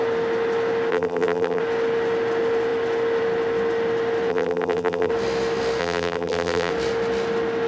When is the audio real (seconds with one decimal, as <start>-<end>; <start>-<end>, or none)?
0.0-0.9; 1.6-4.3; 5.1-5.8; 6.7-7.7